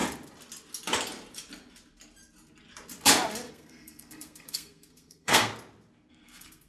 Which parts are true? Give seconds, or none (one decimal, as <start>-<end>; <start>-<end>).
0.0-3.5; 5.5-6.1